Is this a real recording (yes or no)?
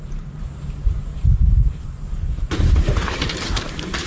no